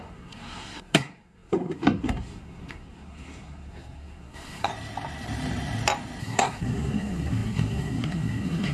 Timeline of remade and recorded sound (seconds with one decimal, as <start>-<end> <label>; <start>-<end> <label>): 0.0-4.7 remade; 4.7-6.2 recorded; 6.2-8.7 remade